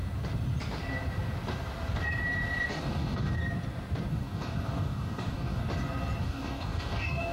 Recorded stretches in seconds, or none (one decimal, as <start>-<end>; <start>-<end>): 0.0-2.7; 3.4-4.1; 5.6-6.2

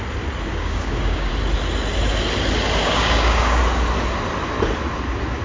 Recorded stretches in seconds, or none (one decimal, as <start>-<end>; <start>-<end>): 0.0-0.5; 1.3-2.8; 3.6-5.4

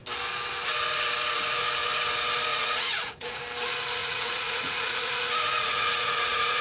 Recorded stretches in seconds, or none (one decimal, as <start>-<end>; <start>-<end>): 0.0-2.5; 3.4-4.0; 5.1-5.5

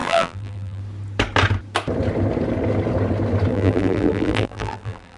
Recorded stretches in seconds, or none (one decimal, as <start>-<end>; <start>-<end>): 0.8-3.5

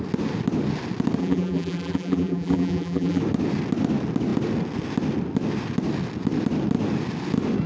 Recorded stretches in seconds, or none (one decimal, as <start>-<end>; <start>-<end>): 0.0-1.2; 3.2-7.7

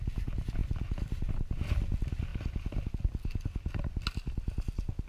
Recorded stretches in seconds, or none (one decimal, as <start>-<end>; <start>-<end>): 0.0-5.1